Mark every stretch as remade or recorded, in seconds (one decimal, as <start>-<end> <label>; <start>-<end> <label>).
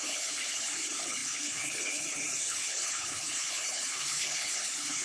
0.0-5.0 remade